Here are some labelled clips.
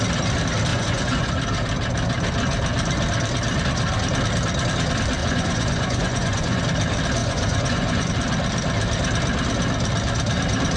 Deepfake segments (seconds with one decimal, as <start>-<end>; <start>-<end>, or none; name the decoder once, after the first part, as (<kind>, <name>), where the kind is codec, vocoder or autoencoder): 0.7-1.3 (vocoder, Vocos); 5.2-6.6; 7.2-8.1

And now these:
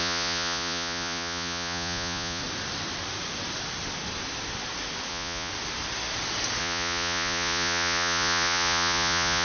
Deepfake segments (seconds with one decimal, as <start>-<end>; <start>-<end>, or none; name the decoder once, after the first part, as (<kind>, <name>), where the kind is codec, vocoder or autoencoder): 0.0-2.4 (vocoder, Vocos); 5.1-5.5; 6.6-9.4

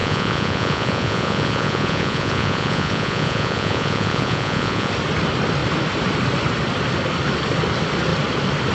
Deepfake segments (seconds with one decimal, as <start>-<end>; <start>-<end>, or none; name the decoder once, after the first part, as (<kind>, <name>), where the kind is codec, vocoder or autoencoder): 0.0-4.9 (vocoder, Vocos)

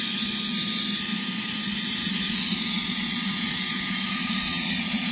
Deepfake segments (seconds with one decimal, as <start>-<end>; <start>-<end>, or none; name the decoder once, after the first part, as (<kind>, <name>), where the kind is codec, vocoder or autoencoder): 2.0-5.1 (vocoder, Vocos)